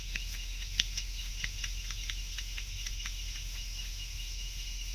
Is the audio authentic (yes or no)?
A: no